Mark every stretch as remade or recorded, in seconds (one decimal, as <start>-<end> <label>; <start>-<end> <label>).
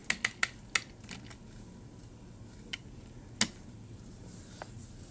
0.0-5.1 recorded